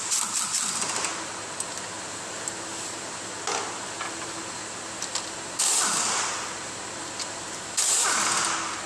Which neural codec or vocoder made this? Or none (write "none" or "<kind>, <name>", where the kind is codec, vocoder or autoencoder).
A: none